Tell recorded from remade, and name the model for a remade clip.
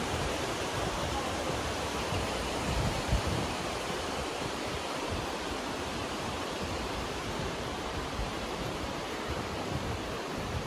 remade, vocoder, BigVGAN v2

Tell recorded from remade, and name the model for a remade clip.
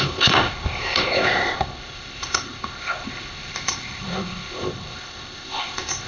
remade, codec, ZipCodec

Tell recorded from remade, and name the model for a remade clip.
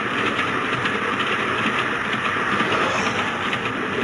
recorded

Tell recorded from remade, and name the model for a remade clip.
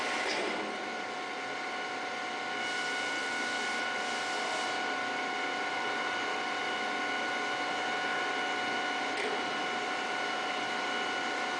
recorded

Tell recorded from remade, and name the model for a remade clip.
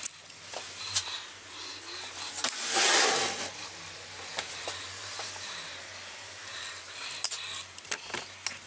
recorded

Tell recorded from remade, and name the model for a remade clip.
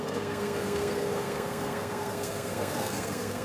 remade, codec, SNAC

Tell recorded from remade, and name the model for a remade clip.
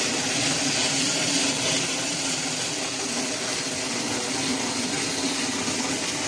recorded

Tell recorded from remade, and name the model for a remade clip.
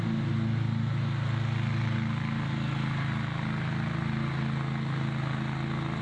recorded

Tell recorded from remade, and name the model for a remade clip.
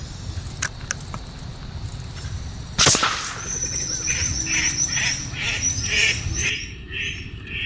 recorded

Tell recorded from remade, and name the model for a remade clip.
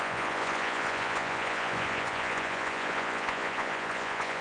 remade, vocoder, Vocos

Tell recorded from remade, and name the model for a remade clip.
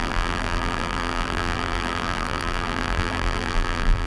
remade, vocoder, BigVGAN v2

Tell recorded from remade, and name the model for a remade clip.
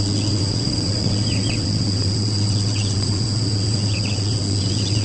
remade, vocoder, WaveNeXt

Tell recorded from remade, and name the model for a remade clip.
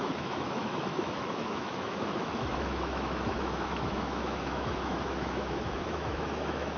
remade, autoencoder, DAC-VAE